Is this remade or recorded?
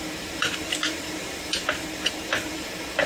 remade